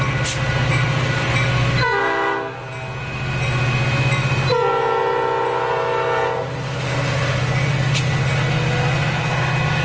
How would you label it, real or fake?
real